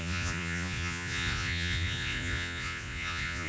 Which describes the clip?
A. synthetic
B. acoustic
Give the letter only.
A